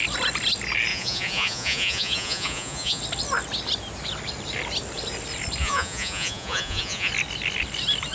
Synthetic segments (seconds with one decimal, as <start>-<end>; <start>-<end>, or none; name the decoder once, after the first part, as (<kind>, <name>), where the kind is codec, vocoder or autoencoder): 0.9-3.0 (vocoder, Vocos); 5.6-7.1